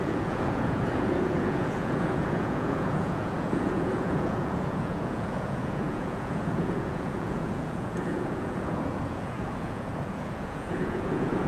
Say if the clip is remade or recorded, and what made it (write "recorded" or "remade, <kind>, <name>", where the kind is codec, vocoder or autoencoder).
remade, vocoder, Vocos